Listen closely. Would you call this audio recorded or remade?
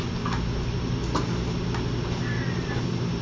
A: recorded